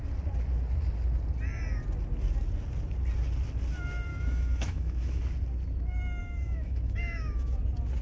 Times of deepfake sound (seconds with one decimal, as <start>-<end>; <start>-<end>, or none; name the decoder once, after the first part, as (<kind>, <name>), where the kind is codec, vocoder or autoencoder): 4.1-5.2 (autoencoder, DAC-VAE); 6.2-7.5